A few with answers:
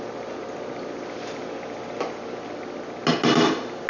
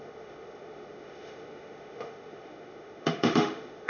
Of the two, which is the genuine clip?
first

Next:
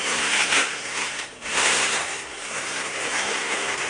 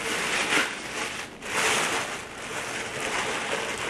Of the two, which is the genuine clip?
second